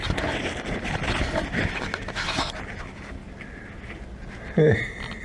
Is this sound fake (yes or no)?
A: no